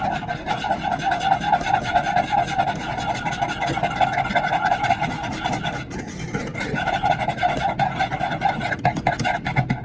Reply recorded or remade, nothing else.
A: recorded